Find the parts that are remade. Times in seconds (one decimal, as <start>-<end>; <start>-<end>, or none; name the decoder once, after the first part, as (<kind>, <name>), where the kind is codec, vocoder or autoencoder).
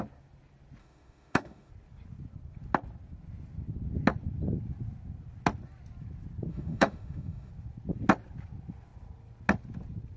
0.8-1.7 (autoencoder, DAC-VAE); 6.5-7.5